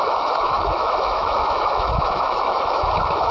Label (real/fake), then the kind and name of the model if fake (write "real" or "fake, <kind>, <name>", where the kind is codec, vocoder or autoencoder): fake, autoencoder, DAC-VAE